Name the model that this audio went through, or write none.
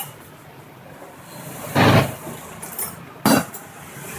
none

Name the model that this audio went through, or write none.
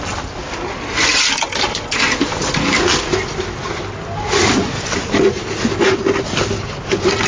none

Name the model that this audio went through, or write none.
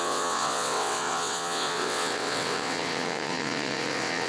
vocoder, WaveNeXt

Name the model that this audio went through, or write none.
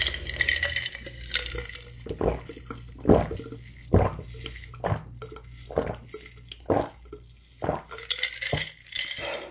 none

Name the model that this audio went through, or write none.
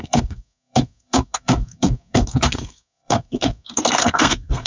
codec, SNAC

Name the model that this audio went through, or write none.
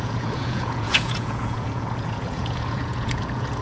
vocoder, Vocos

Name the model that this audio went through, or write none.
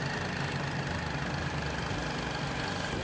none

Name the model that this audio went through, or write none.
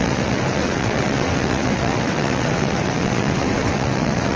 vocoder, WaveNeXt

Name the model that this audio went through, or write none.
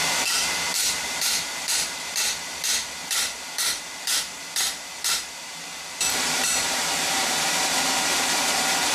vocoder, BigVGAN v2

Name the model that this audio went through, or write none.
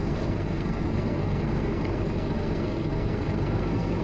codec, SNAC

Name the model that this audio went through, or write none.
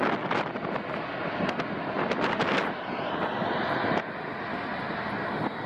none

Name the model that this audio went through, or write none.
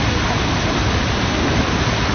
none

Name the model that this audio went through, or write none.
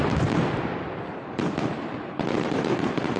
vocoder, BigVGAN v2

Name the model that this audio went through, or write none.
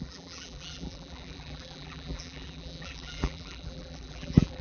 vocoder, BigVGAN v2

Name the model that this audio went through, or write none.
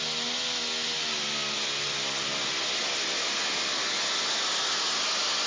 none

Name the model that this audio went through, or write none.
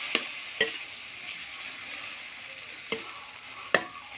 none